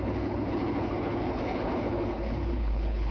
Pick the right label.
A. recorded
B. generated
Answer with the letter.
B